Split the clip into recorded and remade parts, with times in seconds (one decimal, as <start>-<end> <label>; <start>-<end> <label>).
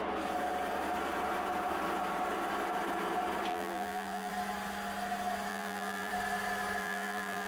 0.0-3.5 recorded; 3.5-4.3 remade; 4.3-5.5 recorded; 5.5-6.1 remade; 6.1-6.8 recorded; 6.8-7.5 remade